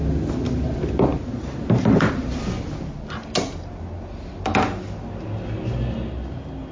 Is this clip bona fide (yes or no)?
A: yes